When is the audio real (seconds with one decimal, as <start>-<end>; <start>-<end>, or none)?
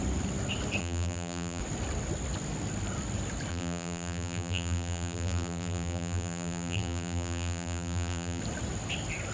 0.0-0.8; 1.6-3.5; 8.4-9.3